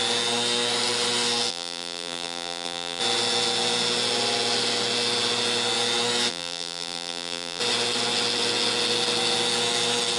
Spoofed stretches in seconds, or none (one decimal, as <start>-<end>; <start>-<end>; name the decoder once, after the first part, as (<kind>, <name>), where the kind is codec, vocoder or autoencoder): 1.5-3.0 (vocoder, BigVGAN v2); 6.3-7.6